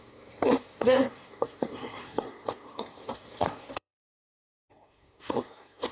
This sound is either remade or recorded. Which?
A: remade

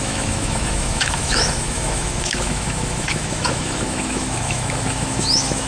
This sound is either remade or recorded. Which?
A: remade